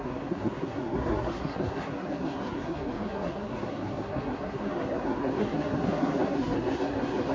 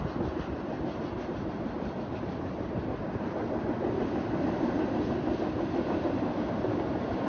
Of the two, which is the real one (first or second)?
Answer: second